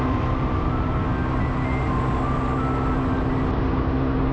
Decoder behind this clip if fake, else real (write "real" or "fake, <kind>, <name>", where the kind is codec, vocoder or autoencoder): real